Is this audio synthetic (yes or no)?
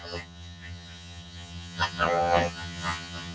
yes